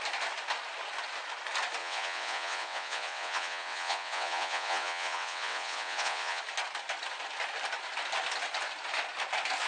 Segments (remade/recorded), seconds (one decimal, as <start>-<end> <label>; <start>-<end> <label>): 0.0-1.8 recorded; 1.8-6.4 remade; 6.4-9.7 recorded